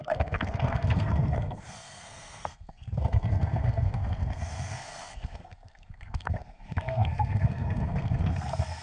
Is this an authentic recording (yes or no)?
no